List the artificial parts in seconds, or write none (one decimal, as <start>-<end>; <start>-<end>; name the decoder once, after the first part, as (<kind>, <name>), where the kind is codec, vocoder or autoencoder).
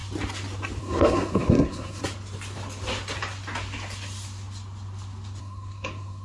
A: 0.8-2.0 (codec, SNAC); 5.4-6.2